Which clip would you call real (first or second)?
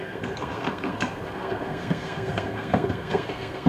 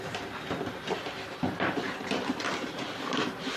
second